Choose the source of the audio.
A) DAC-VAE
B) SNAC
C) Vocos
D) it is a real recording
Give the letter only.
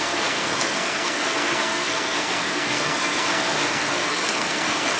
B